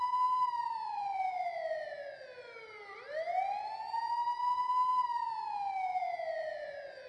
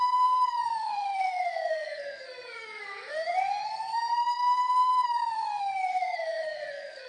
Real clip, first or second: first